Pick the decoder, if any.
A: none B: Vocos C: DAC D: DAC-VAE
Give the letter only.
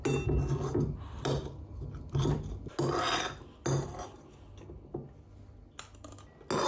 A